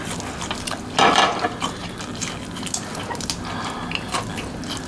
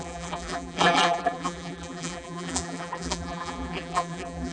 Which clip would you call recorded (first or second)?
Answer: first